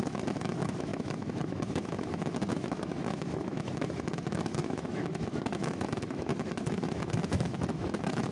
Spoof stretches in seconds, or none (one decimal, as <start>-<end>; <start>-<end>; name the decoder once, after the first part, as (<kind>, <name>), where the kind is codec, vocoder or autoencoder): 0.0-8.3 (autoencoder, DAC-VAE)